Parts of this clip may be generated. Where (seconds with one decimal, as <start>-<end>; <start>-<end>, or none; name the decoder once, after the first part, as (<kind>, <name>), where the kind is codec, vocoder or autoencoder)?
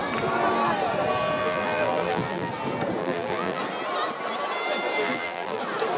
1.4-2.5 (vocoder, BigVGAN v2); 3.0-3.6; 5.0-5.6